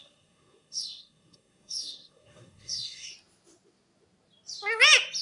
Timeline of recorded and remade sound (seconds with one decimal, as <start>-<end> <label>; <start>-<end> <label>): 0.0-3.1 remade; 3.1-5.2 recorded